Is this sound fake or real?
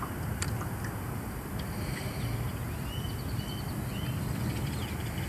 real